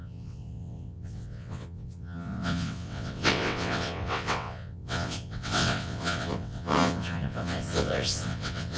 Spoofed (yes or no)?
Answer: yes